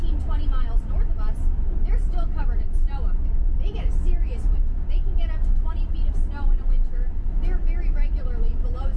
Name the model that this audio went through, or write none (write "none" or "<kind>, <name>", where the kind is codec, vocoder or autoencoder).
none